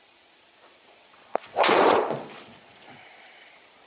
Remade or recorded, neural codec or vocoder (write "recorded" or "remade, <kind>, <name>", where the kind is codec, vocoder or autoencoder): remade, vocoder, Vocos